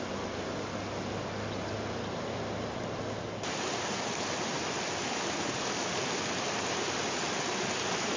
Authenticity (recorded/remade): recorded